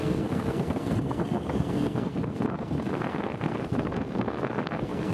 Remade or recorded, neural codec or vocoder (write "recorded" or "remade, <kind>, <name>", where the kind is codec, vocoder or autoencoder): remade, codec, SNAC